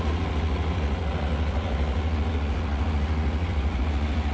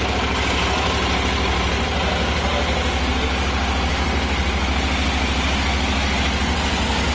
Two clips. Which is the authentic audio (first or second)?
second